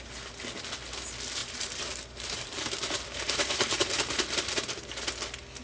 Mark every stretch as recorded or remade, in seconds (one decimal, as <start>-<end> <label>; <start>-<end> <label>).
0.0-1.4 recorded; 1.4-4.8 remade; 4.8-5.6 recorded